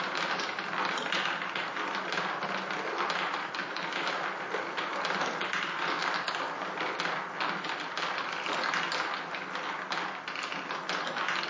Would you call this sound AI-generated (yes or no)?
no